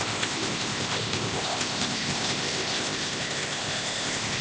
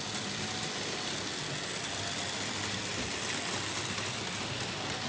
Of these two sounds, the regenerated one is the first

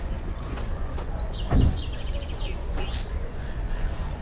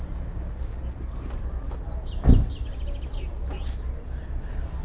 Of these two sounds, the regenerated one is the first